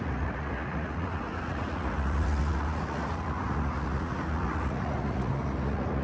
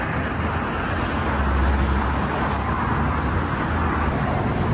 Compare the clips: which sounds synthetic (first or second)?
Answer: first